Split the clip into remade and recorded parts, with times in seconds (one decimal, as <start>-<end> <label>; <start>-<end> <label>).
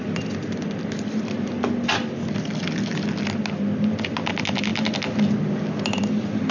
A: 0.0-6.5 recorded